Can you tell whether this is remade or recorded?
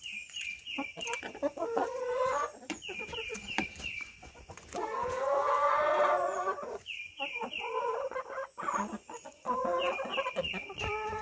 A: remade